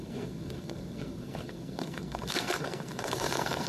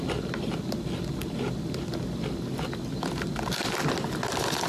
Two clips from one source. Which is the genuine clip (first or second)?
second